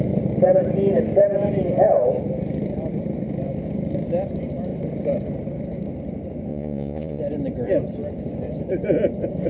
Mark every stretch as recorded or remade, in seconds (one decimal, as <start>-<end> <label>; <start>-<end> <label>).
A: 0.0-6.5 recorded; 6.5-7.2 remade; 7.2-9.5 recorded